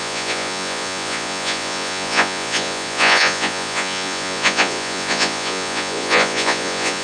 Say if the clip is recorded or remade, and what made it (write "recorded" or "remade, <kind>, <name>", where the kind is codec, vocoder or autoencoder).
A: remade, vocoder, Vocos